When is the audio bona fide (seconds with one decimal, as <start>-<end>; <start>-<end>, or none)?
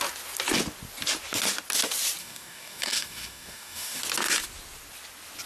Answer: 0.0-2.2; 4.0-5.5